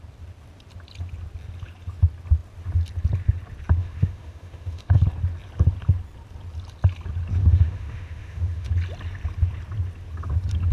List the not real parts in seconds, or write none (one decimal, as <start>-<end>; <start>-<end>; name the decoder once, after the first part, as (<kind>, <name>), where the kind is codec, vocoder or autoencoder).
3.8-5.0 (autoencoder, DAC-VAE); 7.4-8.7